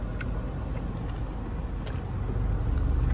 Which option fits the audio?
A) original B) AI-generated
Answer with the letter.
A